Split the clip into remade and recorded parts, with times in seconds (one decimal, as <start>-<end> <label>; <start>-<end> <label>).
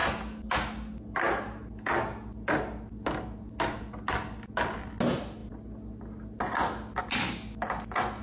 0.0-8.2 recorded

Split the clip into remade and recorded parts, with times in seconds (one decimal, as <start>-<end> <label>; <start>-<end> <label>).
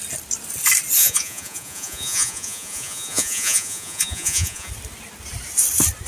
0.0-1.0 recorded; 1.0-4.7 remade; 4.7-6.1 recorded